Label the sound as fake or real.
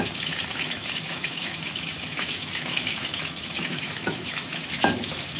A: fake